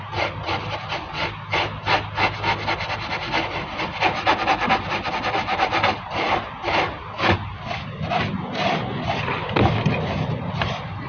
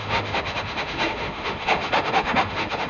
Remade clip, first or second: second